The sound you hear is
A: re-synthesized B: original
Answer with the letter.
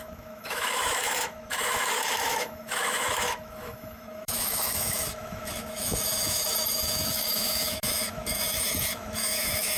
A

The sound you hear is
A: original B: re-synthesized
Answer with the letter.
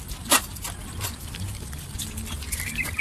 A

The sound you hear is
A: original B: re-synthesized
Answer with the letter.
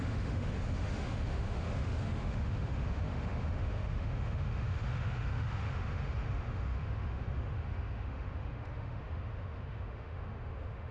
B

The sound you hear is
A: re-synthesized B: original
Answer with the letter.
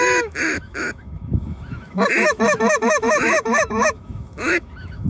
A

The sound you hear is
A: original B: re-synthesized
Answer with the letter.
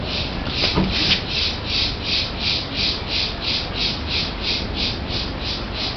A